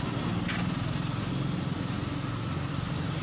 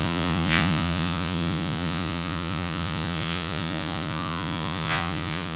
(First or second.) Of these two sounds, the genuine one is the first